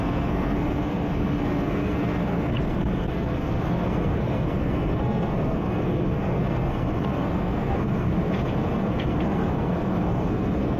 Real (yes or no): no